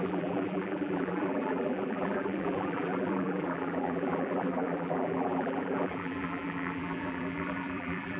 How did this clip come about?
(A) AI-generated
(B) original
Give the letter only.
A